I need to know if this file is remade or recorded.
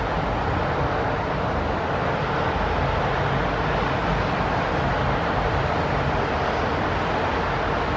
recorded